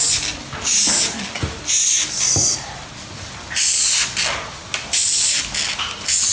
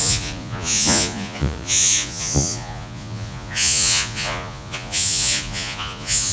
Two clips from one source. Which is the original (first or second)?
first